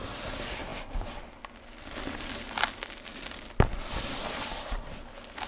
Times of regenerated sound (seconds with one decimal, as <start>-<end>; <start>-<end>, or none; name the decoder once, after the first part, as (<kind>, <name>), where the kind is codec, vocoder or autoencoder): none